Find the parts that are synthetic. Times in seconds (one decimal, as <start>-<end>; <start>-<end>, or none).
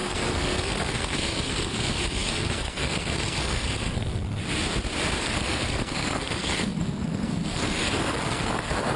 0.0-4.4; 5.2-9.0